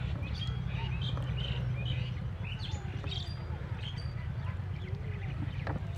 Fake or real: real